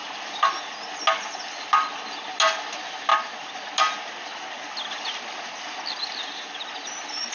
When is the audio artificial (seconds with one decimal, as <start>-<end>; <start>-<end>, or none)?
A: 0.0-0.6